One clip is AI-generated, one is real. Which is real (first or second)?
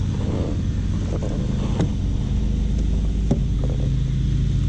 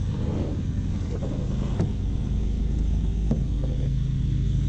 first